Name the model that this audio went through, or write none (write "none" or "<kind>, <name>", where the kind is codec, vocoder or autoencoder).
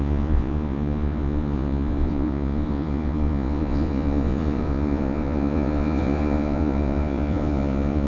vocoder, Vocos